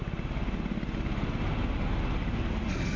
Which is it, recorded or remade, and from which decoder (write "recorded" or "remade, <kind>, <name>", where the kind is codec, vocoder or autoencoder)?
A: recorded